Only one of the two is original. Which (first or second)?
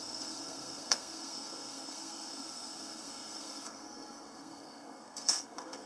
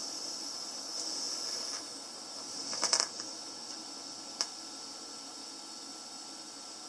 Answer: second